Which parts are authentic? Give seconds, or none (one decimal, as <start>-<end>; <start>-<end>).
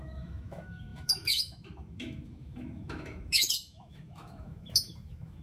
none